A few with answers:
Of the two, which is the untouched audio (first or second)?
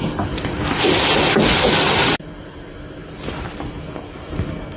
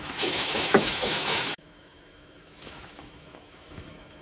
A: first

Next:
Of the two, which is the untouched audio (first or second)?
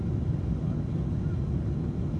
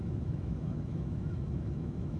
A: first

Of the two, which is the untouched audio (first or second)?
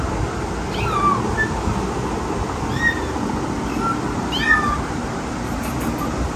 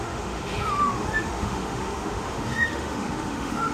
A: first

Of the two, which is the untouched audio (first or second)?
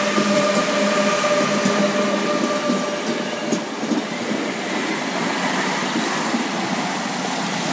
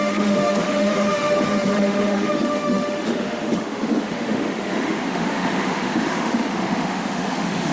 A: first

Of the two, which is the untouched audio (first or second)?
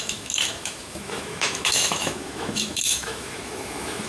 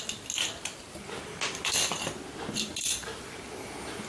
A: second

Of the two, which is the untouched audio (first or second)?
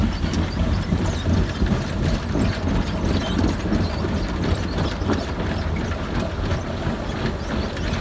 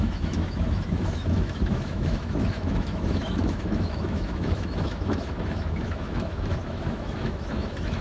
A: first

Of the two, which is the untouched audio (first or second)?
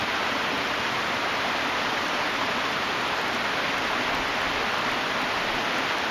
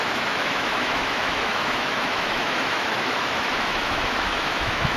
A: first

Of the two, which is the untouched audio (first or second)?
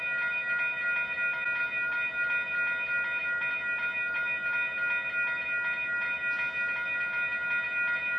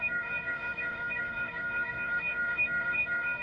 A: first